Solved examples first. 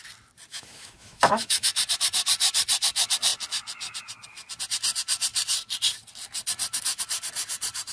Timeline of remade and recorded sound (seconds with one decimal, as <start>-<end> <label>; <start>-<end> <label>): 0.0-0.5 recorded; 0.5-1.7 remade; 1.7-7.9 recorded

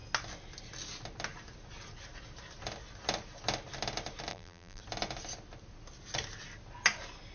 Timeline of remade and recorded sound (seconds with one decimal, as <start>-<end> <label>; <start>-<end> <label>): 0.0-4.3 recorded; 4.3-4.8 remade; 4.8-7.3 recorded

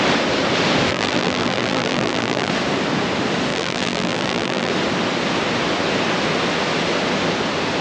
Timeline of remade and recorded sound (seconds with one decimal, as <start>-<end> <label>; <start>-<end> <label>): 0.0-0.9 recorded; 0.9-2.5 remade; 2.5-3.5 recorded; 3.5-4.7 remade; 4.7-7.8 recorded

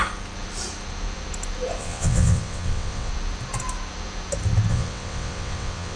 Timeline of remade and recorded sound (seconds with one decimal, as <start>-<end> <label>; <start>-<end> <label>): 0.0-1.8 recorded; 1.8-3.1 remade; 3.1-4.7 recorded; 4.7-6.0 remade